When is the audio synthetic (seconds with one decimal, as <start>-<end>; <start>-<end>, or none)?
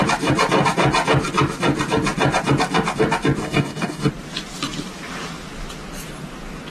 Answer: 3.4-4.1